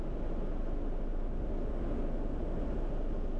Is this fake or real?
real